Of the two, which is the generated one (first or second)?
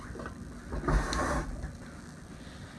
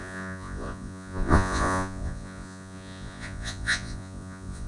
second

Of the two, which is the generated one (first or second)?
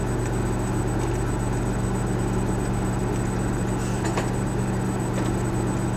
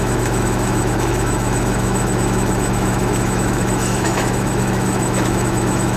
second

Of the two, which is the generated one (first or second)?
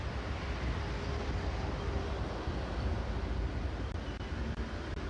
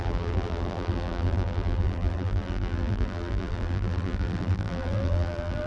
second